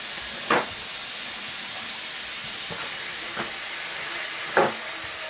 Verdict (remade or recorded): recorded